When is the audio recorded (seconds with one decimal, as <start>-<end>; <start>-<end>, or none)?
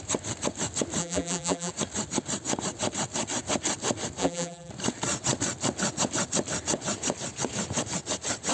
0.0-1.0; 1.7-4.2; 4.7-8.5